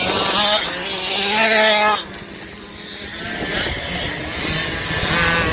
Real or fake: real